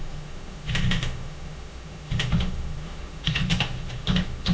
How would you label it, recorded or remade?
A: remade